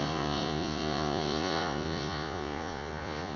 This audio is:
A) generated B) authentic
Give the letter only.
A